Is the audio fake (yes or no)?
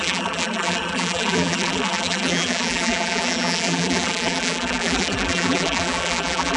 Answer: yes